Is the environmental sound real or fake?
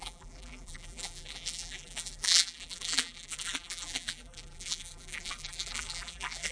fake